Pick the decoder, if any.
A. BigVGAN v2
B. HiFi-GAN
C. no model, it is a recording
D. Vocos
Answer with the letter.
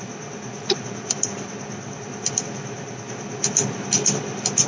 C